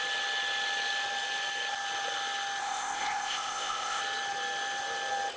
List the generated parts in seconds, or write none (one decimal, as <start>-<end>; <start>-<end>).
2.6-4.0